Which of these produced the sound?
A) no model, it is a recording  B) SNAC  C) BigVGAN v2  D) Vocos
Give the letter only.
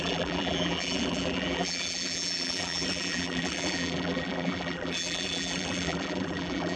C